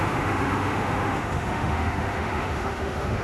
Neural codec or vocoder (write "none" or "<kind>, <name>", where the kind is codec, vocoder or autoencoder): autoencoder, DAC-VAE